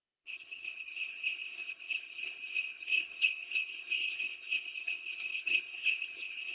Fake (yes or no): yes